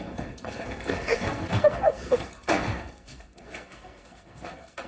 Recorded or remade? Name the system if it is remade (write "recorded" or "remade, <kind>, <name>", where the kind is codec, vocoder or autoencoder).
remade, codec, SNAC